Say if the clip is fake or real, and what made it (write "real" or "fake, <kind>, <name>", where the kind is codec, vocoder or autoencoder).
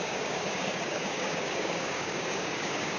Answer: fake, codec, DAC